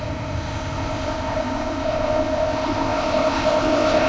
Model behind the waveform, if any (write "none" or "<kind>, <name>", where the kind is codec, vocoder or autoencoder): codec, ZipCodec